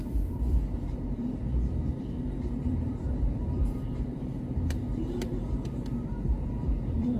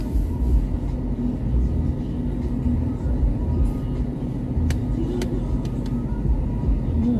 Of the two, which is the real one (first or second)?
second